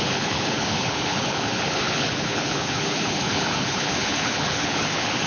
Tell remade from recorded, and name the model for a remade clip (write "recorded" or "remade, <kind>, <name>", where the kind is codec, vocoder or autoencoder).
remade, codec, HILCodec